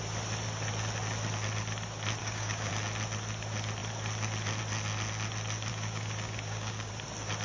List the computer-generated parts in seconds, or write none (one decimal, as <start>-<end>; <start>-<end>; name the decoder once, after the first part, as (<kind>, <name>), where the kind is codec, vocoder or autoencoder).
2.2-2.7 (codec, DAC); 5.7-6.9